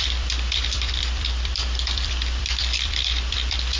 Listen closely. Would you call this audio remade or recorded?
remade